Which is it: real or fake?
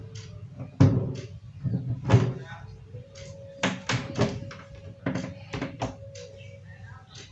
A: real